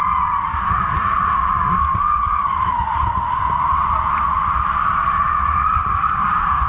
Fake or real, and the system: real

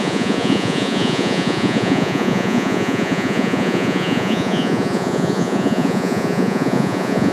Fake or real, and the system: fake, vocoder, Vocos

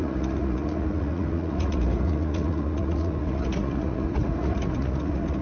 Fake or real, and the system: fake, vocoder, Vocos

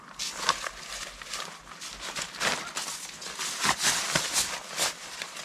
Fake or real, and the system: real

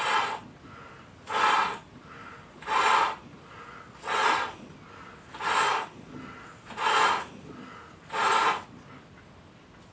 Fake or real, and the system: real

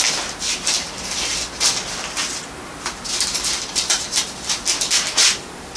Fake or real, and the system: real